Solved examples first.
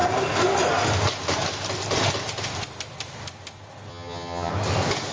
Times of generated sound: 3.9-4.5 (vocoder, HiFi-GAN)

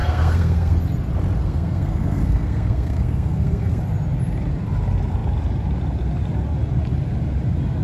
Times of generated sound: 0.0-0.8 (codec, SNAC); 1.4-3.8

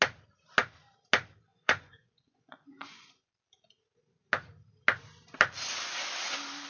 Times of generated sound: 1.5-3.3 (vocoder, Vocos)

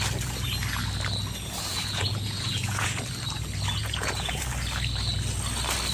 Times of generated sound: 1.7-3.0 (vocoder, Vocos); 3.8-4.4

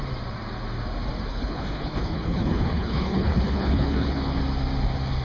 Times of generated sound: 1.3-4.4 (codec, HILCodec)